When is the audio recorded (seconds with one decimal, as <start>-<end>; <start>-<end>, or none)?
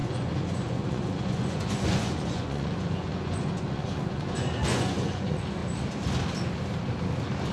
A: 5.6-7.5